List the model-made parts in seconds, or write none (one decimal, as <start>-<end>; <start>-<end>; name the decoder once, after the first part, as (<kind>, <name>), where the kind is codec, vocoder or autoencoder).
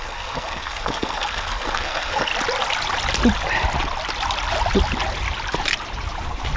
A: 0.0-2.3 (codec, SNAC)